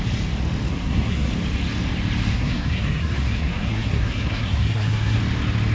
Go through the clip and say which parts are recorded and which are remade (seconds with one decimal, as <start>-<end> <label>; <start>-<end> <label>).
0.0-0.7 recorded; 0.7-1.3 remade; 1.3-2.3 recorded; 2.3-5.2 remade; 5.2-5.7 recorded